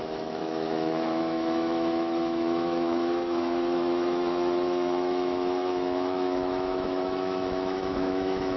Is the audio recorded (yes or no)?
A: no